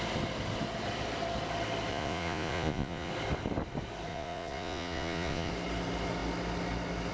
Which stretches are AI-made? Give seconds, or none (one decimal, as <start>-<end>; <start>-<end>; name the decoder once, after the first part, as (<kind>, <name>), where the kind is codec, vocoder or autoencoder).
1.9-3.1 (vocoder, Vocos); 4.1-5.5